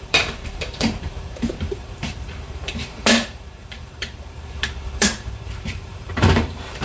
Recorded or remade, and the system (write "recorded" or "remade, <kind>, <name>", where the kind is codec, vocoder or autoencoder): remade, vocoder, BigVGAN v2